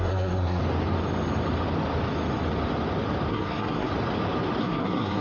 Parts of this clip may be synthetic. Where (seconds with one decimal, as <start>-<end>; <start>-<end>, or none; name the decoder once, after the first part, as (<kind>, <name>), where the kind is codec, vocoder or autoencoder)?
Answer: 0.0-0.6 (codec, SNAC); 3.3-3.9; 4.6-5.2